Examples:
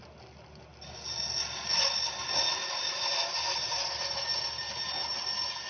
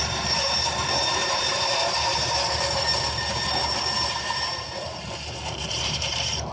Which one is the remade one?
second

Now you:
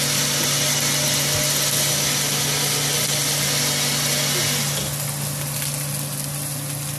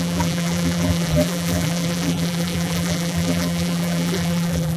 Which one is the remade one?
second